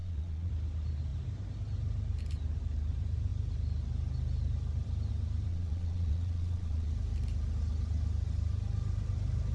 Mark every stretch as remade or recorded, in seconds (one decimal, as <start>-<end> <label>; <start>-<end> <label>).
0.0-0.5 remade; 0.5-5.5 recorded; 5.5-6.9 remade; 6.9-9.5 recorded